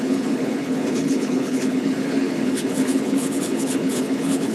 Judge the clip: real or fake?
fake